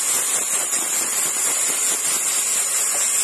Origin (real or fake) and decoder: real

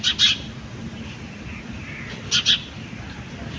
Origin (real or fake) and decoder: real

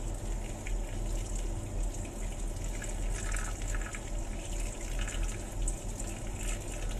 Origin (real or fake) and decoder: real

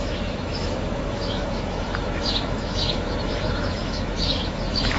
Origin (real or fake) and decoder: fake, autoencoder, DAC-VAE